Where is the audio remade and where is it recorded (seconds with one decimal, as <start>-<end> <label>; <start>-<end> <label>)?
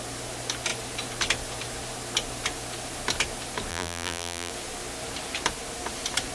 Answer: 0.0-3.7 recorded; 3.7-4.5 remade; 4.5-6.3 recorded